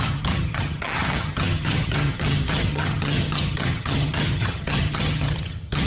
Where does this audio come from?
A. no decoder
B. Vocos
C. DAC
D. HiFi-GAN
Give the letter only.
D